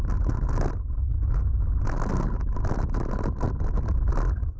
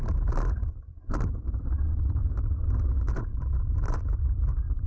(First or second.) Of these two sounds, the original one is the first